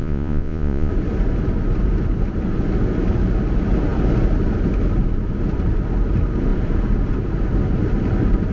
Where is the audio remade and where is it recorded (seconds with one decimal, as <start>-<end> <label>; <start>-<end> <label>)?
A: 0.0-0.9 remade; 0.9-8.5 recorded